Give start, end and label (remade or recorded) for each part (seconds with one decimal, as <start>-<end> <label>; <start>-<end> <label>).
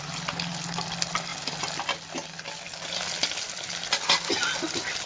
0.0-5.1 recorded